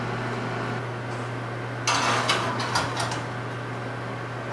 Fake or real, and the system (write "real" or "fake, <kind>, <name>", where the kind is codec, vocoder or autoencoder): real